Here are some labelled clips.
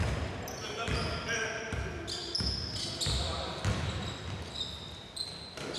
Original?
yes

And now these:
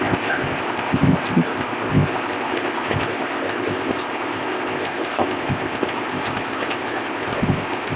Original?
no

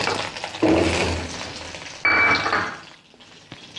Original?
yes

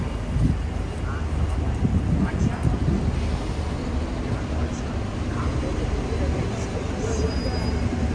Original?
yes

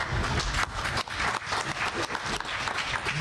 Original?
yes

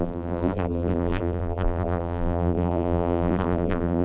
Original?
no